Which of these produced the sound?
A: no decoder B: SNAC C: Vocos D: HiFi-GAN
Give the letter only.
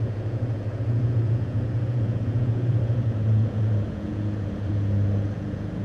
C